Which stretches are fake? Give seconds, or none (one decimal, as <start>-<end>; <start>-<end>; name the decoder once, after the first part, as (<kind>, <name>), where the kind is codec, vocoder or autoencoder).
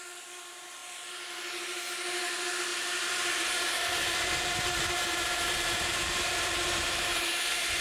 2.7-7.8 (vocoder, BigVGAN v2)